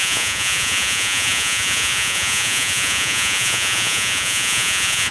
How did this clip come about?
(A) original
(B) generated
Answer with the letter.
B